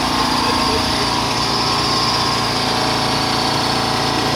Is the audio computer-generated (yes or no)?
no